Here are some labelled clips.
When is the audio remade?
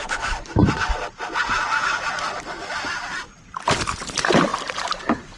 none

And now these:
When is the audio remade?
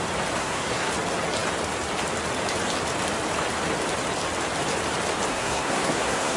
0.4-0.9 (codec, SNAC); 5.3-6.4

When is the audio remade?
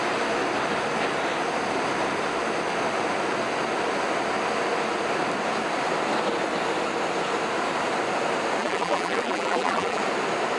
8.6-10.0 (vocoder, BigVGAN v2)